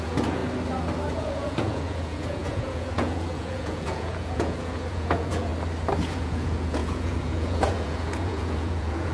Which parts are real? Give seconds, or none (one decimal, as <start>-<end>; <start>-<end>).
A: 0.4-1.1; 5.5-6.0